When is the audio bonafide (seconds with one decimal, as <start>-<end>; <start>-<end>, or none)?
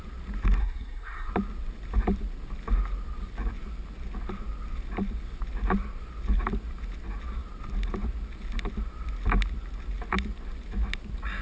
0.0-0.6; 1.3-11.4